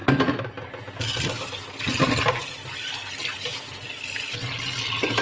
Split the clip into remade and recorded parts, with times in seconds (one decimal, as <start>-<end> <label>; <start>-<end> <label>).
0.0-5.2 recorded